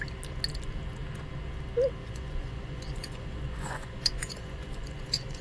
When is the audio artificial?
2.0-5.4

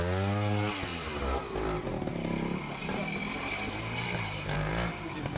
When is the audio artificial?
0.9-2.0; 2.8-4.7

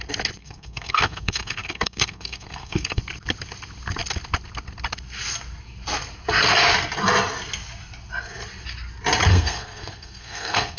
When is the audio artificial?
0.4-3.0; 9.3-10.8

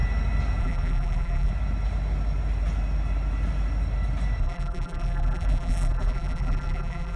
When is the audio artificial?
0.6-1.5; 4.4-7.2